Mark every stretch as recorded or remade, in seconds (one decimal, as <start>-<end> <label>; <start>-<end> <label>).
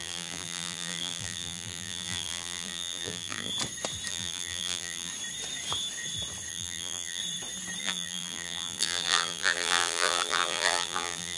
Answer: 0.0-3.5 remade; 3.5-4.1 recorded; 4.1-5.1 remade; 5.1-6.5 recorded; 6.5-7.2 remade; 7.2-7.8 recorded; 7.8-11.4 remade